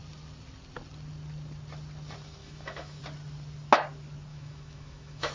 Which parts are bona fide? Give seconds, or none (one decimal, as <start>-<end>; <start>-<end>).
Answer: 0.0-2.4; 3.0-4.3